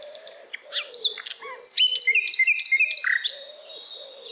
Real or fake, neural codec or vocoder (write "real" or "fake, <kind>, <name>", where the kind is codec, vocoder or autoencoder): real